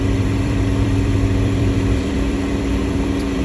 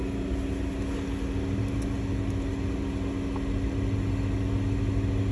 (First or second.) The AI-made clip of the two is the first